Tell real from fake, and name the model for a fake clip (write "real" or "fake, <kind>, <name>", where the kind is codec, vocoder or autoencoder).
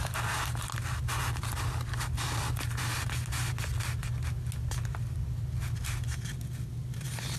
real